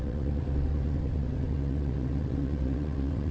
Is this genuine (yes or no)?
no